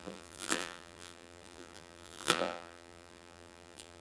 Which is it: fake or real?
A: fake